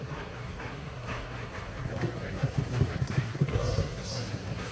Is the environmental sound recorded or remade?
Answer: remade